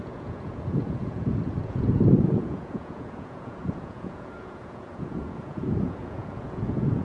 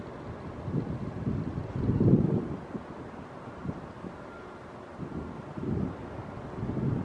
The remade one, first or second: first